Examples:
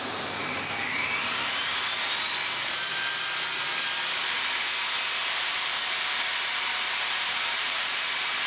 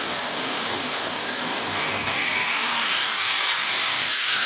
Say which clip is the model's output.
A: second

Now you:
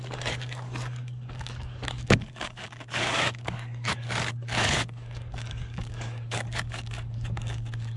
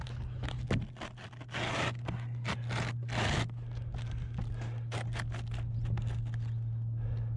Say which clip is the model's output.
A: first